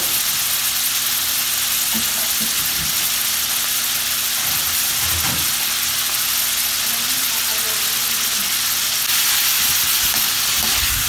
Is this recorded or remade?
recorded